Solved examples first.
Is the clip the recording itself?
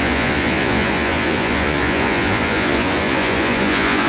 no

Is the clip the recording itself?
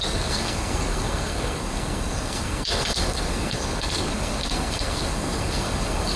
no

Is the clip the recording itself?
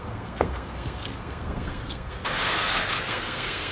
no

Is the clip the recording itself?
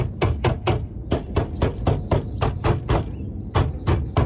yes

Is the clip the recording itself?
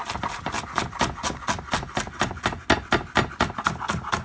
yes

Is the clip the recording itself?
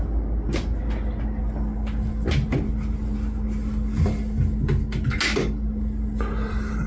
yes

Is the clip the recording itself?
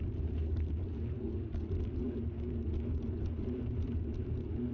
yes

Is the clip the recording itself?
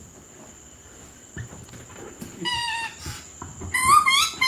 yes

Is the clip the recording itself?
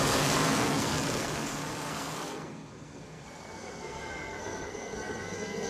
no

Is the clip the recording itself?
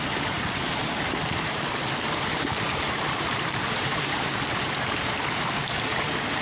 no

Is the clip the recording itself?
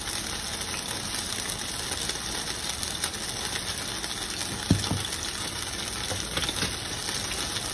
yes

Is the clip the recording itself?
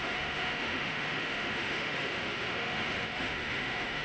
no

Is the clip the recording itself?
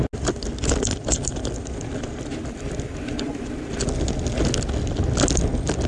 yes